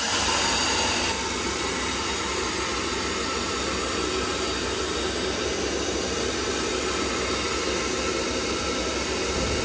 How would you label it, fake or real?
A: real